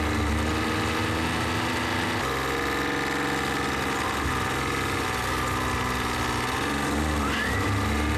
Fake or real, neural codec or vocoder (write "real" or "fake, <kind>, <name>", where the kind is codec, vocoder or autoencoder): real